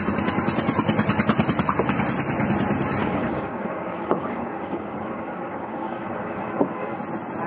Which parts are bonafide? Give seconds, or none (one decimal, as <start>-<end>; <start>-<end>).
0.0-3.0; 7.0-7.5